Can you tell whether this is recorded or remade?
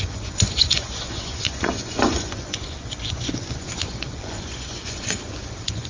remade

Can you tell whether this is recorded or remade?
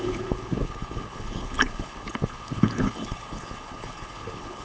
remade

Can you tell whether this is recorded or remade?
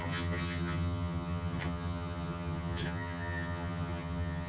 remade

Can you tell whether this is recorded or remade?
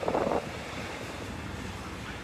remade